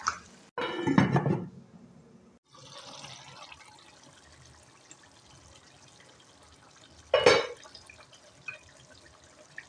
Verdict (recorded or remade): recorded